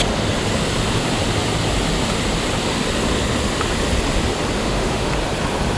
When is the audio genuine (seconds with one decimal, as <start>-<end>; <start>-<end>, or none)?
0.0-4.6; 5.1-5.8